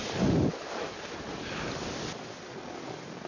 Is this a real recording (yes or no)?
yes